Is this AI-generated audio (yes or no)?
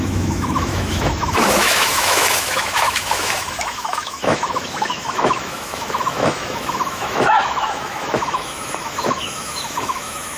yes